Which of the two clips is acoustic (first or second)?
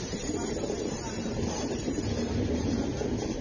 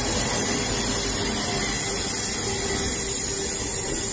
second